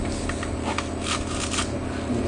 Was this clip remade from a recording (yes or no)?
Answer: no